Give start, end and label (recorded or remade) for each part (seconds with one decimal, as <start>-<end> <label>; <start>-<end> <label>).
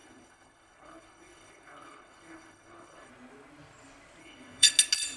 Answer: 0.0-3.1 remade; 3.1-4.2 recorded; 4.2-4.7 remade; 4.7-5.2 recorded